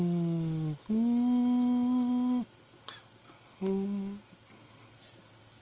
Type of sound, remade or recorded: recorded